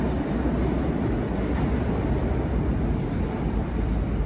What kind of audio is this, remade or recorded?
recorded